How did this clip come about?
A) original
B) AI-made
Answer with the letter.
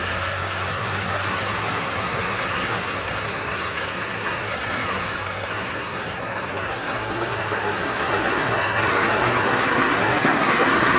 B